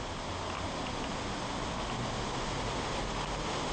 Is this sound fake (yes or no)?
no